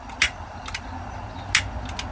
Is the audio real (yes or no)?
yes